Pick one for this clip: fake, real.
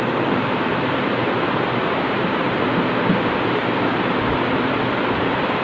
real